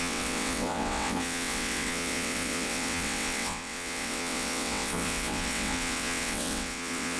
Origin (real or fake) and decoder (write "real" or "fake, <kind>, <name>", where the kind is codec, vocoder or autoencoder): fake, vocoder, WaveNeXt